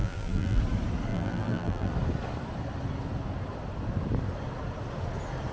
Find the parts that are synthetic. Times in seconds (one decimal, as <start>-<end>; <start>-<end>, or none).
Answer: 0.0-0.6; 1.1-1.9